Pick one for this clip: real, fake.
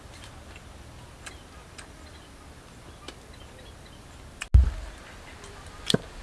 real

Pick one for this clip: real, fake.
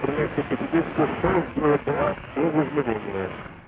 fake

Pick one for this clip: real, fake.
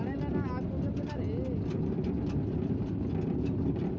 real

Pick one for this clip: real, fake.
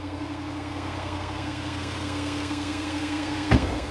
fake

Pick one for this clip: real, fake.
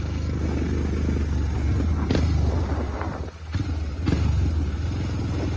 real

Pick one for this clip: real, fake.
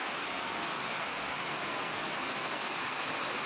fake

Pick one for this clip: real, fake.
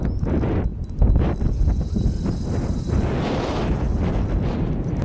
real